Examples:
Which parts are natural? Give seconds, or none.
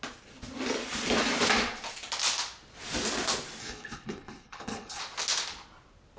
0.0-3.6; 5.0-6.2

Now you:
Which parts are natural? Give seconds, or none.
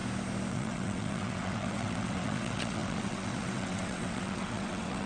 0.0-0.5